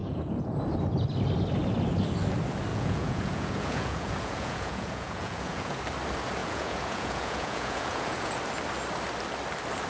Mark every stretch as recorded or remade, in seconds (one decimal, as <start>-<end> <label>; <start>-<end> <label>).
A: 0.0-0.5 remade; 0.5-2.7 recorded; 2.7-5.8 remade; 5.8-6.4 recorded; 6.4-8.3 remade; 8.3-9.9 recorded